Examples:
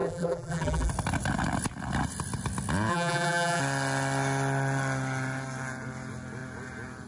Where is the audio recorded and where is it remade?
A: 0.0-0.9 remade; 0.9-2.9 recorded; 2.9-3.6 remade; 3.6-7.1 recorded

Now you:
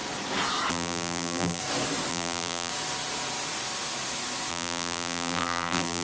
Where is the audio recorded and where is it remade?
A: 0.0-0.7 recorded; 0.7-1.6 remade; 1.6-2.1 recorded; 2.1-2.7 remade; 2.7-4.5 recorded; 4.5-6.0 remade

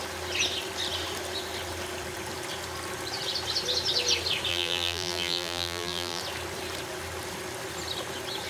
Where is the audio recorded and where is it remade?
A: 0.0-4.5 recorded; 4.5-6.2 remade; 6.2-8.5 recorded

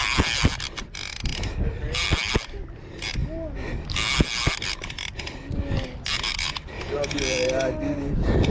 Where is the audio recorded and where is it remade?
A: 0.0-8.5 recorded

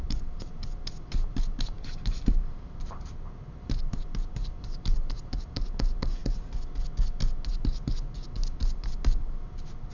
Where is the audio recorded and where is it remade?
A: 0.0-6.2 remade; 6.2-7.5 recorded; 7.5-9.9 remade

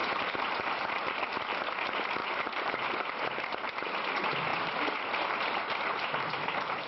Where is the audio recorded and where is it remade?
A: 0.0-1.5 remade; 1.5-2.2 recorded; 2.2-3.9 remade; 3.9-4.5 recorded; 4.5-6.9 remade

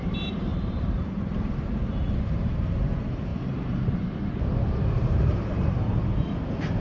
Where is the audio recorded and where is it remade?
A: 0.0-3.3 remade; 3.3-4.7 recorded; 4.7-6.8 remade

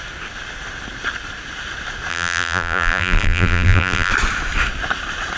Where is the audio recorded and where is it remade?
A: 0.0-2.1 recorded; 2.1-4.1 remade; 4.1-5.4 recorded